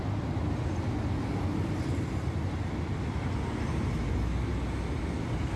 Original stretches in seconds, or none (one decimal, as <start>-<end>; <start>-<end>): 0.0-5.6